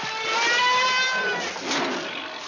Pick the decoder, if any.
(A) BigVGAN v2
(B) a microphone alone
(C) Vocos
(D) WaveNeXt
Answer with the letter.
B